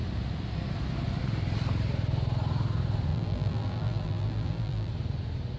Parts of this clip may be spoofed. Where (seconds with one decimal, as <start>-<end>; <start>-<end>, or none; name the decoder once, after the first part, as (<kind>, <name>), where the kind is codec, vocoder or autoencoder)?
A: 3.1-4.9 (vocoder, BigVGAN v2)